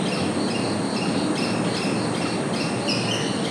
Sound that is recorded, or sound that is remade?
recorded